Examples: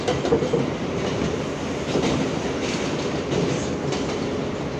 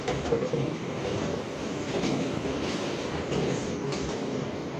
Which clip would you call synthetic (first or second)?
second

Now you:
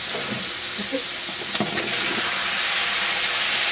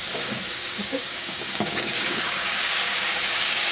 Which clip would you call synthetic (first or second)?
second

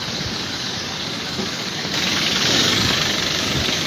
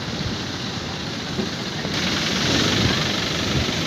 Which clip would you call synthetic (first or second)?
first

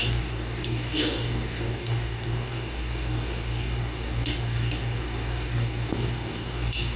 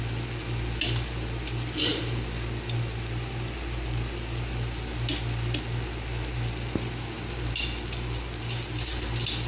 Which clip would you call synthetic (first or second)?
first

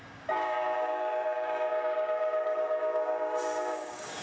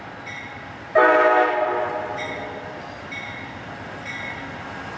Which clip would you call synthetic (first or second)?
first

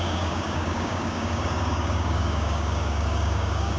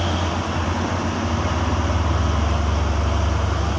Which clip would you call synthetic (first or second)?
first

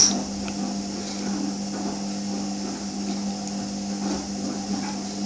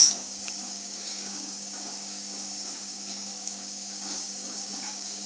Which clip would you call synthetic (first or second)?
second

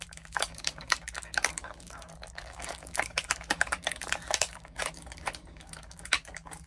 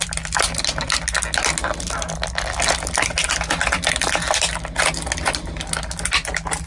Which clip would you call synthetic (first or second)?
first